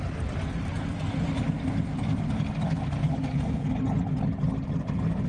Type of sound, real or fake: real